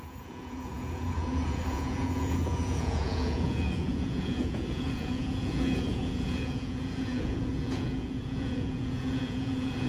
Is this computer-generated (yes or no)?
yes